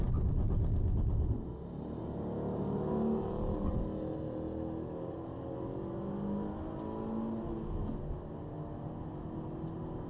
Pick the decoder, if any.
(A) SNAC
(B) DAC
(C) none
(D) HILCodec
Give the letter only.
C